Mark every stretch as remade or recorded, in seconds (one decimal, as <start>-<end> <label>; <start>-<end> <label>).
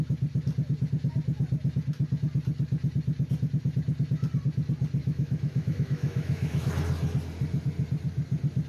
0.0-5.0 recorded; 5.0-6.7 remade; 6.7-8.7 recorded